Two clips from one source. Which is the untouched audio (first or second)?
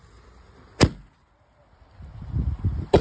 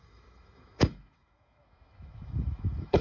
first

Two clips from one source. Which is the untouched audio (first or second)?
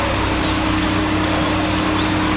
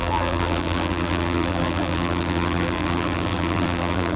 first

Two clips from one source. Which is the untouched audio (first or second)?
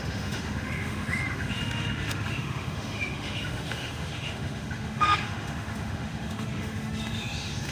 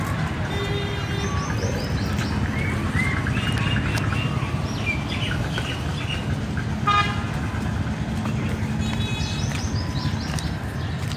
second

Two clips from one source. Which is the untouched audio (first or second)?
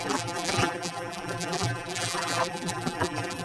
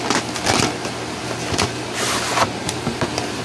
second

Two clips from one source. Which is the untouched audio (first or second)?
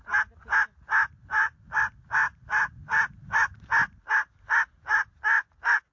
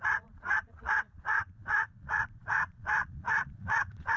first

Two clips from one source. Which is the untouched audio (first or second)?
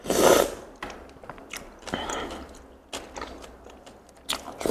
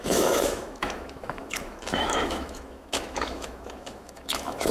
first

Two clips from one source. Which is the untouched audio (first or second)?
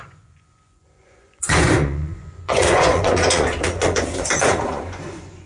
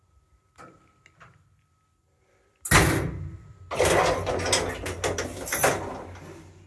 second